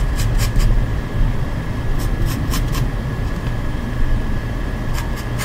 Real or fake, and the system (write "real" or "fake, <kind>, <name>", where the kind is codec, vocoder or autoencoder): real